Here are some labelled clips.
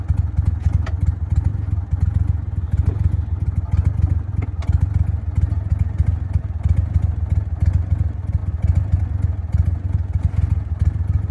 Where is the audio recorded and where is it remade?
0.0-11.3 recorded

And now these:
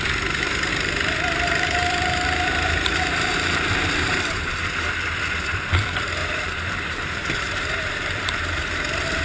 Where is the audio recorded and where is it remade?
0.0-0.7 recorded; 0.7-4.9 remade; 4.9-6.2 recorded; 6.2-8.4 remade; 8.4-9.2 recorded

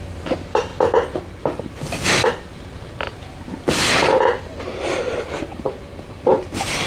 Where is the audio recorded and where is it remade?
0.0-0.7 remade; 0.7-1.6 recorded; 1.6-2.5 remade; 2.5-3.1 recorded; 3.1-6.9 remade

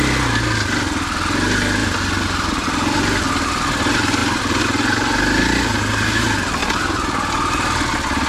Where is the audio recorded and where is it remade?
0.0-1.8 recorded; 1.8-3.2 remade; 3.2-6.6 recorded; 6.6-7.9 remade; 7.9-8.3 recorded

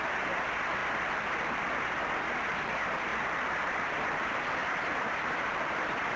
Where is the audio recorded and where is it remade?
0.0-0.8 recorded; 0.8-1.7 remade; 1.7-3.1 recorded; 3.1-3.7 remade; 3.7-4.6 recorded; 4.6-6.2 remade